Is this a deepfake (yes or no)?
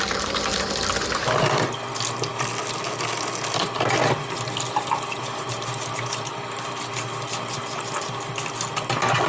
no